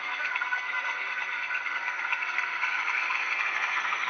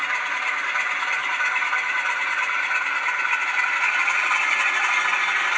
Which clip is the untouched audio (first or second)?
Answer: second